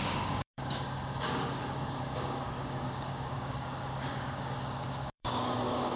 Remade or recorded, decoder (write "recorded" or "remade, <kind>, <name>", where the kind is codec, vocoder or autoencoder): remade, codec, DAC